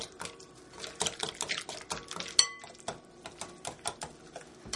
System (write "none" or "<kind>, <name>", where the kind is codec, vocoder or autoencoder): none